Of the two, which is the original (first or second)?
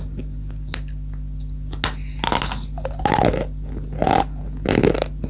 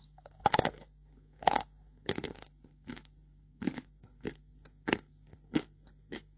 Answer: first